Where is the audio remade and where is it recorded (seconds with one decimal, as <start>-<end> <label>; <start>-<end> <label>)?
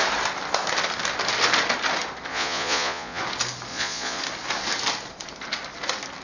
0.0-2.3 recorded; 2.3-3.2 remade; 3.2-3.7 recorded; 3.7-4.2 remade; 4.2-6.2 recorded